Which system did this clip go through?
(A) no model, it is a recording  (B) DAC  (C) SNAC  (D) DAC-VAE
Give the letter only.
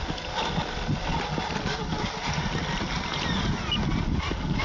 A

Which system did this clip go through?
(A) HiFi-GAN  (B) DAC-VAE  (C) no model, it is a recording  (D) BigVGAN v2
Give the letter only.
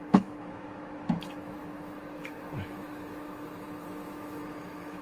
B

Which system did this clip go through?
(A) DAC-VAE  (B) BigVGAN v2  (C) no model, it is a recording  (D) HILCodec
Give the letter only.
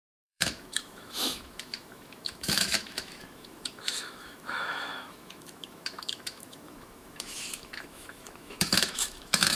A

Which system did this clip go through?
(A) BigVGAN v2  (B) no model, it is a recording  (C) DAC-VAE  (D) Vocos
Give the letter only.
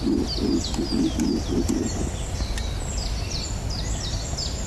B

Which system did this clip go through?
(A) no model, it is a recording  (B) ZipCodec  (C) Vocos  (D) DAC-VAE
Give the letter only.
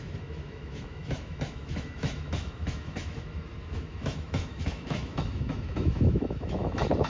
D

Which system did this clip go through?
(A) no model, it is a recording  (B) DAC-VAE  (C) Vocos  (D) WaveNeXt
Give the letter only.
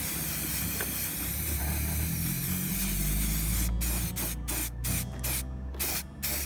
A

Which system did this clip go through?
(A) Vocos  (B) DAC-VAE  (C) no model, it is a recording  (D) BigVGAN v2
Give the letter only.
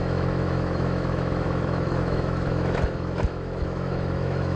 B